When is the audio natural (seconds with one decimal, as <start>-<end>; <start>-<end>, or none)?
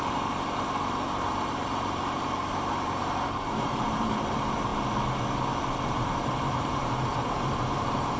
4.7-5.8